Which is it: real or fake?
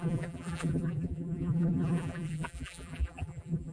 fake